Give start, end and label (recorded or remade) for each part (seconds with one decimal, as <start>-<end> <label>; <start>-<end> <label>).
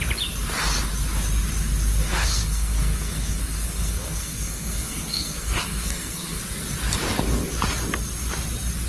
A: 0.0-2.0 recorded; 2.0-6.4 remade; 6.4-8.9 recorded